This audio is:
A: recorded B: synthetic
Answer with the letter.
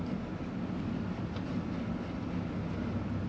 A